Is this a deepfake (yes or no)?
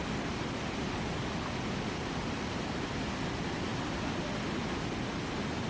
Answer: no